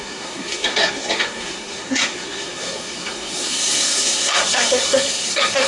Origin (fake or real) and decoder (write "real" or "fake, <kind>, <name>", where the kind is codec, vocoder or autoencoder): fake, codec, SNAC